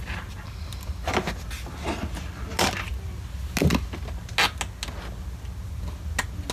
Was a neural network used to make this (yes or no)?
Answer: no